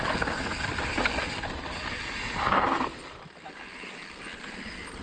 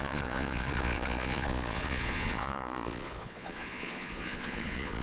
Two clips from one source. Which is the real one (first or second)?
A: first